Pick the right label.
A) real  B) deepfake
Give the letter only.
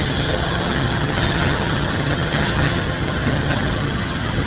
B